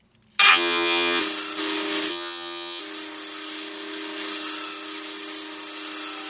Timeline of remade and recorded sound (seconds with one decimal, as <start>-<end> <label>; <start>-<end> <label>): 0.0-0.5 recorded; 0.5-1.2 remade; 1.2-2.1 recorded; 2.1-2.8 remade; 2.8-6.3 recorded